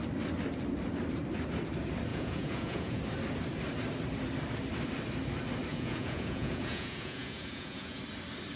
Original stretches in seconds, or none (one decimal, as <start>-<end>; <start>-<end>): 0.0-2.1; 3.0-5.7; 8.0-8.6